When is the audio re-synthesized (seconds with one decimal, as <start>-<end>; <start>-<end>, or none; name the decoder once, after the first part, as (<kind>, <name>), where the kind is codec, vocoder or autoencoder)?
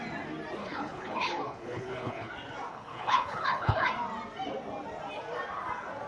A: 0.6-2.3 (codec, HILCodec); 2.7-3.9